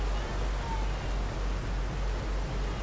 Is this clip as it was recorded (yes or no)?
yes